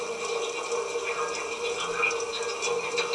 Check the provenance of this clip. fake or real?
real